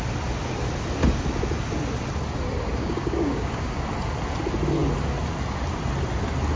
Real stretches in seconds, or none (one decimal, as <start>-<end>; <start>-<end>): 0.0-2.8; 3.8-6.6